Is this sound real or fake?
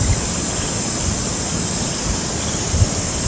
real